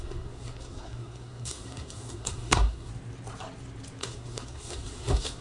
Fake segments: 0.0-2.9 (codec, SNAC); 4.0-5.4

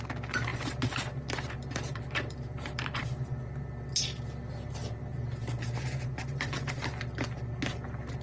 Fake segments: 0.5-3.4 (vocoder, BigVGAN v2); 5.1-6.9

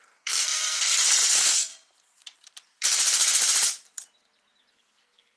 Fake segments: 0.0-1.7 (codec, SNAC); 4.7-5.4

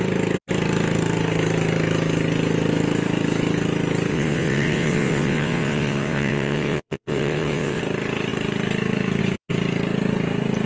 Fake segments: 4.1-7.8 (vocoder, WaveNeXt)

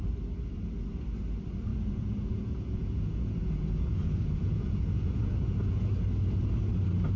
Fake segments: 1.7-5.9 (vocoder, Vocos)

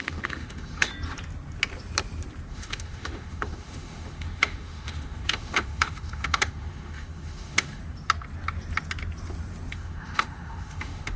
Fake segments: 0.0-0.9 (autoencoder, DAC-VAE); 2.5-7.8; 9.7-11.2

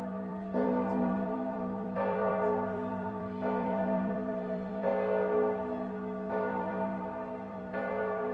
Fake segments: 0.0-4.9 (vocoder, BigVGAN v2); 6.3-8.3